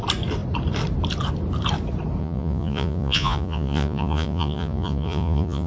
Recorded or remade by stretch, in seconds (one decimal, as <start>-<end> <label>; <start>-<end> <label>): 0.0-2.2 recorded; 2.2-5.7 remade